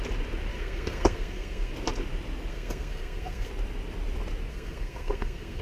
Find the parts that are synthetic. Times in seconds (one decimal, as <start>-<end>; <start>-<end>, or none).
0.5-1.7; 2.5-3.5; 4.5-5.6